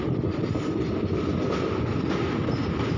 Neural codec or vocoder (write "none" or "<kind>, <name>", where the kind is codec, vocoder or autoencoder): none